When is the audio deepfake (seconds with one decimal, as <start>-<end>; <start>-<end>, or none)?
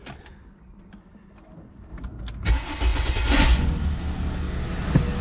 2.9-3.7